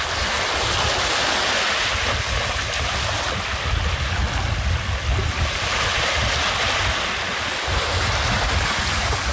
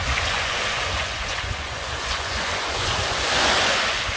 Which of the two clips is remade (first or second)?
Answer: second